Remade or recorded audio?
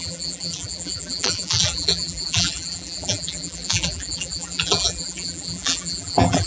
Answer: remade